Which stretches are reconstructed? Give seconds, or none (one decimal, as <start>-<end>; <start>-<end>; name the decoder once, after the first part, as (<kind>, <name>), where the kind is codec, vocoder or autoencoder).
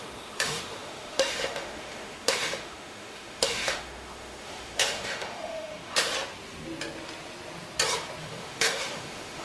0.0-6.1 (autoencoder, DAC-VAE); 8.2-9.4